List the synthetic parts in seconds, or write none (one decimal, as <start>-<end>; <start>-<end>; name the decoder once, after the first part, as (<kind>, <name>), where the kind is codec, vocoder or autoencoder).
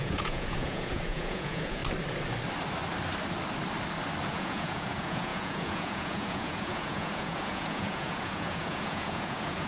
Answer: 0.0-1.8 (vocoder, Vocos); 4.3-9.7